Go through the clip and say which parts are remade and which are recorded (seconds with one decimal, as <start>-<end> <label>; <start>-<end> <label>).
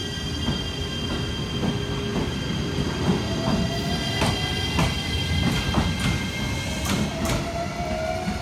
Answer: 0.0-8.4 recorded